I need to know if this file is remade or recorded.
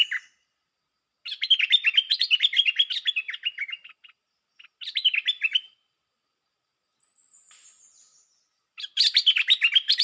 recorded